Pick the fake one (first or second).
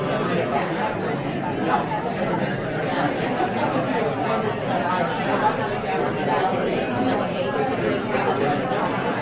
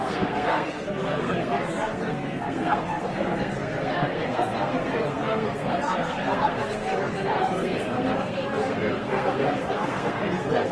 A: second